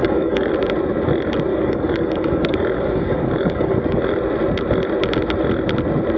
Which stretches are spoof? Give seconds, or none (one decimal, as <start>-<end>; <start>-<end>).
0.0-0.5; 1.5-4.0